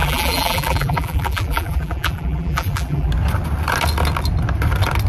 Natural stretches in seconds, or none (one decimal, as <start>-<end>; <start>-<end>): 3.1-5.1